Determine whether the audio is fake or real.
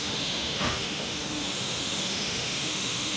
fake